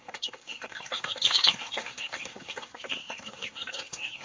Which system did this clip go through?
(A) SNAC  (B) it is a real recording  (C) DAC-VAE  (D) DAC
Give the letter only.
A